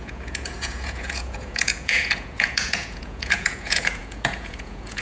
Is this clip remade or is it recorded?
remade